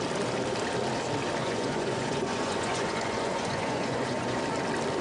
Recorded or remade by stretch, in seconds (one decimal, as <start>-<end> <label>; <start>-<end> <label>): 0.0-1.4 recorded; 1.4-4.4 remade; 4.4-5.0 recorded